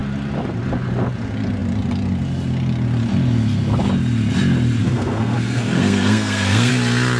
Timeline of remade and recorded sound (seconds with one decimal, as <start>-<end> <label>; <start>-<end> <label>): 0.0-4.8 recorded; 4.8-6.7 remade; 6.7-7.2 recorded